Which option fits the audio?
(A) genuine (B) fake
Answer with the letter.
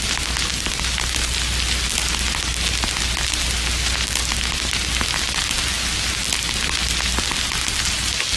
A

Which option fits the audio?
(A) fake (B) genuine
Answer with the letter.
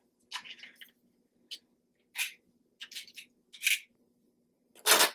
B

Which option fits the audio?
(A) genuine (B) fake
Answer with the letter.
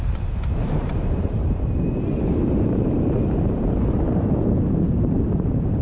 B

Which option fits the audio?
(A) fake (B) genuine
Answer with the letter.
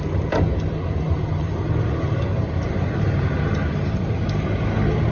A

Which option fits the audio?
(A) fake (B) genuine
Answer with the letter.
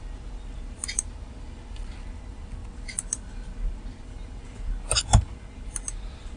A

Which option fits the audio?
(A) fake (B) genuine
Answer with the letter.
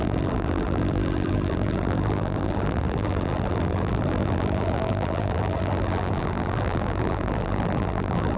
A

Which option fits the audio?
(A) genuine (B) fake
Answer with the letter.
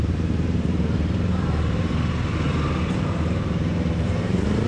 B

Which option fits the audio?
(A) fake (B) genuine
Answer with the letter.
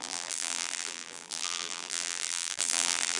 A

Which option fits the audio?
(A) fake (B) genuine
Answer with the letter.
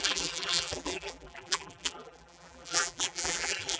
A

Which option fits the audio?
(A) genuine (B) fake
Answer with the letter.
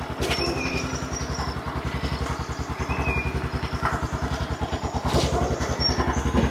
A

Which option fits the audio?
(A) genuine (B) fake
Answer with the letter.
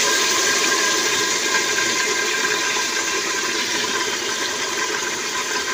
A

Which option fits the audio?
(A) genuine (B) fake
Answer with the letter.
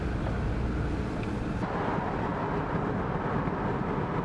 A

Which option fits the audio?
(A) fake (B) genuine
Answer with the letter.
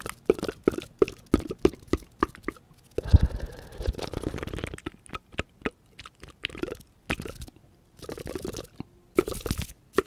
B